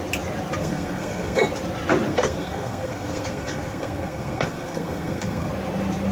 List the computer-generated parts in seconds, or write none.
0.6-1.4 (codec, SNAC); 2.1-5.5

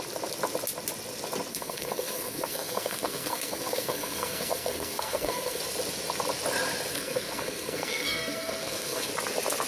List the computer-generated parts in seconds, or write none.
1.5-5.6 (codec, SNAC); 6.9-9.1

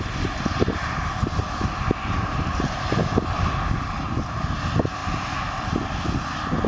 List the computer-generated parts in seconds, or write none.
none

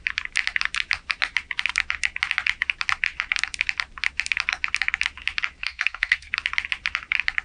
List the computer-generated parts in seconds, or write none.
5.6-6.3 (codec, SNAC)